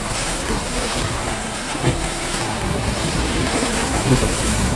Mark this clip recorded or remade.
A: remade